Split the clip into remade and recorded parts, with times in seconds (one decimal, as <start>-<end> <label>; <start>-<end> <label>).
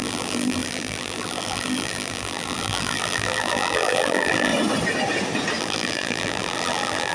0.0-4.5 remade; 4.5-5.6 recorded; 5.6-7.1 remade